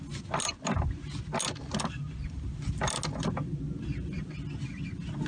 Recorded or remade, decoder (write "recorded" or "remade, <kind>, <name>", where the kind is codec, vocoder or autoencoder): recorded